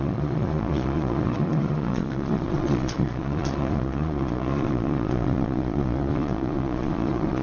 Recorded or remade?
remade